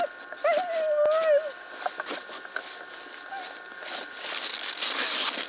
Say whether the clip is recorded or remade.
recorded